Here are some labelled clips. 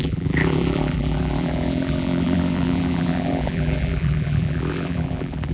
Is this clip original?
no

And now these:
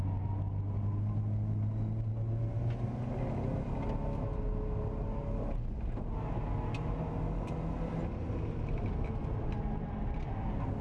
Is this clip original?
yes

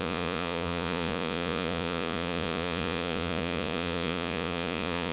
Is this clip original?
no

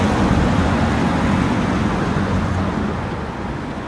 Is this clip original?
no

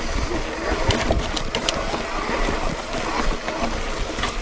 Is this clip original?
yes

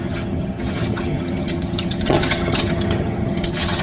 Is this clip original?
no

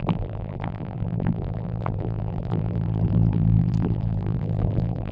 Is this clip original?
no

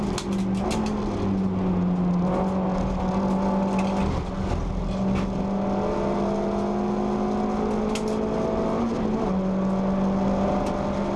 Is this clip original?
yes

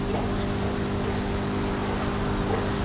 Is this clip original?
yes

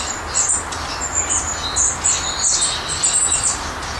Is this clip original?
yes